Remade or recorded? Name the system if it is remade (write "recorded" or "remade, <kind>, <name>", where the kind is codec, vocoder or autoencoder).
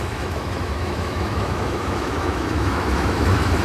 remade, autoencoder, DAC-VAE